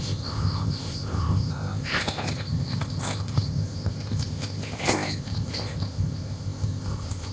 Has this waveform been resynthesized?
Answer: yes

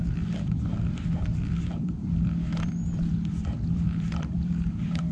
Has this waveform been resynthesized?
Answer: yes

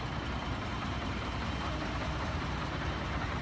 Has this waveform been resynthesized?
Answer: yes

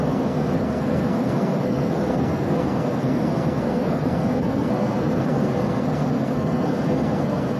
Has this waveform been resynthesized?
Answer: yes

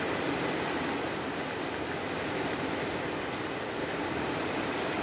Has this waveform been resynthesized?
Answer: no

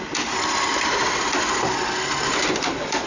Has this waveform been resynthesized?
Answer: no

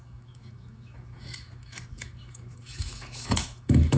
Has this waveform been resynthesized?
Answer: yes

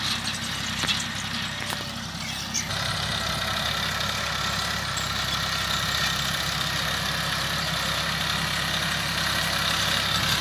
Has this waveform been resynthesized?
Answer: no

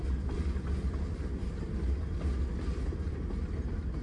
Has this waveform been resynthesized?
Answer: no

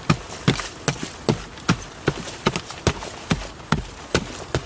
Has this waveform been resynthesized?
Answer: no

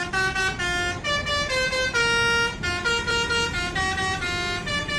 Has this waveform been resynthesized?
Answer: no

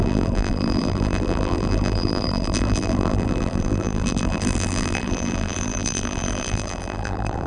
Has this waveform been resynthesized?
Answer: yes